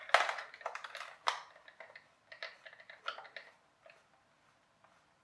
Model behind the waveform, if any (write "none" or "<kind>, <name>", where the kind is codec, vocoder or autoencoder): none